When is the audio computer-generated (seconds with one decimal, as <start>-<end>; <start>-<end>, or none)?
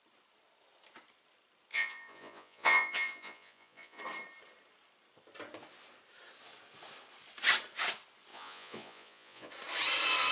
1.7-4.0; 8.3-9.5